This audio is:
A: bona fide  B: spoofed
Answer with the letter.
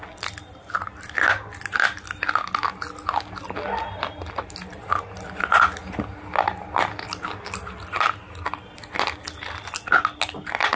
A